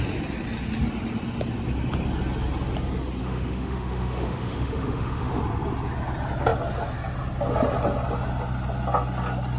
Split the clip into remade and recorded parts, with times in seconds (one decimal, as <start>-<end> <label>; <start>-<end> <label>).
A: 0.0-3.2 recorded; 3.2-5.4 remade; 5.4-9.6 recorded